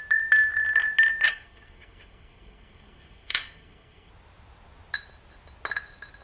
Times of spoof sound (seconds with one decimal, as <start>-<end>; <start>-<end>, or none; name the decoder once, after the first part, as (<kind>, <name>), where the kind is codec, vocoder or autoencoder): 1.3-4.1 (codec, SNAC)